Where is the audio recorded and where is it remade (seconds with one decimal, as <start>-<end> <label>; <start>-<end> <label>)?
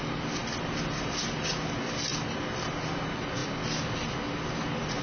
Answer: 0.0-5.0 recorded